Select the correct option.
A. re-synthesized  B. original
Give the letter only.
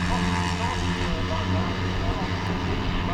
B